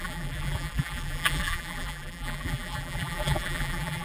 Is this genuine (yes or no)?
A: no